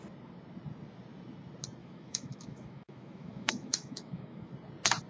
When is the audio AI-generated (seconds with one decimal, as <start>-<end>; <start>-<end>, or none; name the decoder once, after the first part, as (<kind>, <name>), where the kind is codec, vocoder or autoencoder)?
1.8-4.5 (autoencoder, DAC-VAE)